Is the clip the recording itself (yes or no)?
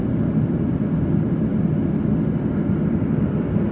yes